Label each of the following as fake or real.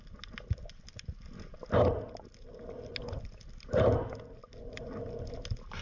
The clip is real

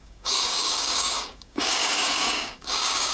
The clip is fake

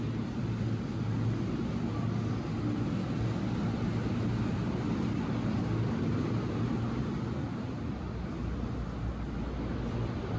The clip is real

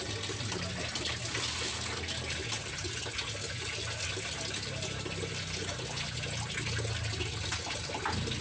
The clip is real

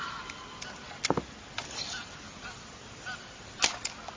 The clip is real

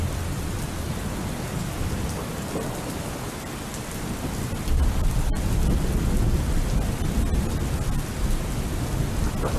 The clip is real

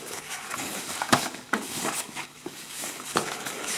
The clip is fake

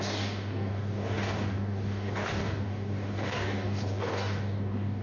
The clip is fake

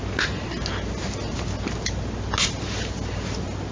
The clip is real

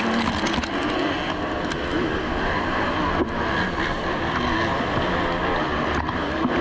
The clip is real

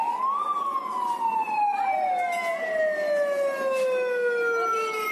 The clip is real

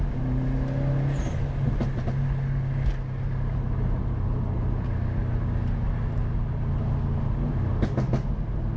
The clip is real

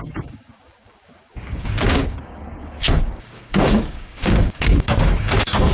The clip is fake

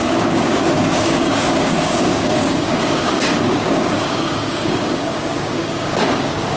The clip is fake